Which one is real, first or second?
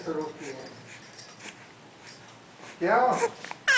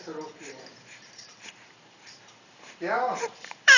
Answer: first